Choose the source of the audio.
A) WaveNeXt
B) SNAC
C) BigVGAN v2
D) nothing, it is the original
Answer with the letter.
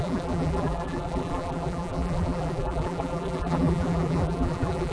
C